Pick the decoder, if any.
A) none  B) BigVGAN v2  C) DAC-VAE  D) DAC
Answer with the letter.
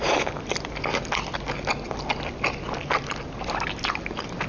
A